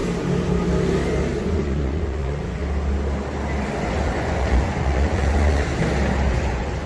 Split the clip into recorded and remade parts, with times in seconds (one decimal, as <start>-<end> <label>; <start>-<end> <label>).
0.0-1.4 recorded; 1.4-2.6 remade; 2.6-3.8 recorded; 3.8-5.7 remade; 5.7-6.3 recorded; 6.3-6.9 remade